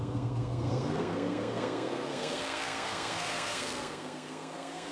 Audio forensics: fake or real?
fake